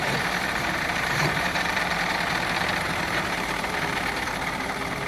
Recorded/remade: remade